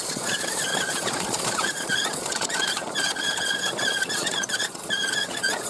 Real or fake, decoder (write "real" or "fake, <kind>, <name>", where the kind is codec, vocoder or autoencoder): fake, vocoder, Vocos